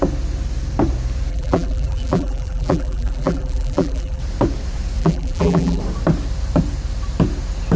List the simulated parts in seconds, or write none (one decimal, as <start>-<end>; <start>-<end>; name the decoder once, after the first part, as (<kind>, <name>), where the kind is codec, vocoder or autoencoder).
1.3-4.2 (vocoder, BigVGAN v2); 5.0-5.8